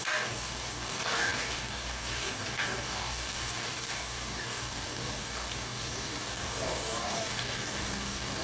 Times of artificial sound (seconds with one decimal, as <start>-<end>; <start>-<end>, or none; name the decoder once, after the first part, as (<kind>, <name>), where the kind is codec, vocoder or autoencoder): 0.0-8.4 (codec, DAC)